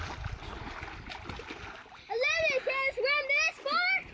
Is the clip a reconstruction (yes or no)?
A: no